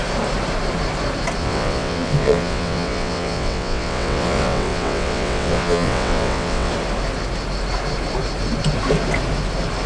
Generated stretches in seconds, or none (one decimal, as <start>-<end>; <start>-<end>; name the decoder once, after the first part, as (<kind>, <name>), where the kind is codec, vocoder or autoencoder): 1.4-6.7 (vocoder, WaveNeXt)

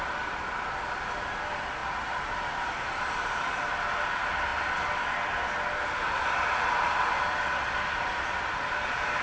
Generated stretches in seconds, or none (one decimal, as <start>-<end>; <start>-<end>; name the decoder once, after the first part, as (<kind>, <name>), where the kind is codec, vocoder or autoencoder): none